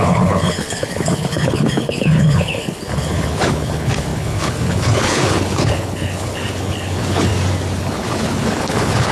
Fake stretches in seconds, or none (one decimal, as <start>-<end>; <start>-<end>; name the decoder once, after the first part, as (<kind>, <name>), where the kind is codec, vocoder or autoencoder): 0.0-7.3 (codec, HILCodec); 7.8-9.1